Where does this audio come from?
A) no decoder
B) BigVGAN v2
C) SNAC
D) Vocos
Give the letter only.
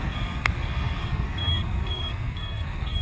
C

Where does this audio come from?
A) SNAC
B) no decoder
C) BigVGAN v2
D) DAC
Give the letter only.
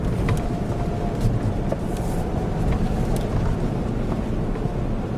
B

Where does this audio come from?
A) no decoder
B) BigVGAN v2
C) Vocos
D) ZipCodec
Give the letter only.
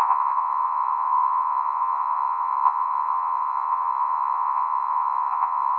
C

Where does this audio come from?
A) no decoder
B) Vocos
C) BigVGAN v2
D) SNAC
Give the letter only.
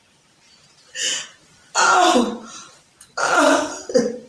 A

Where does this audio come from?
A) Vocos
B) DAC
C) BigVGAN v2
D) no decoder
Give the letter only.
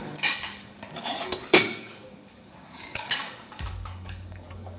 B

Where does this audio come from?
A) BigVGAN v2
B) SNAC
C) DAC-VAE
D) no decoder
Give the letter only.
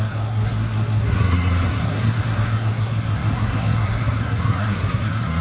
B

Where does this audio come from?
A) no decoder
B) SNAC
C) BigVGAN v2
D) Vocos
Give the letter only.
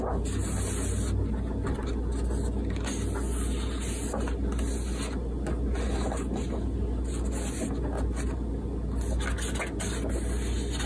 A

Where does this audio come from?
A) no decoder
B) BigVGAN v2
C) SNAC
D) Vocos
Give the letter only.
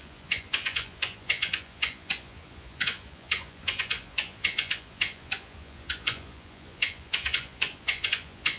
D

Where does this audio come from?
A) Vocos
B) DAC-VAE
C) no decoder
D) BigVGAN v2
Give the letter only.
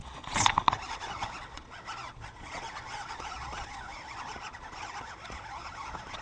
A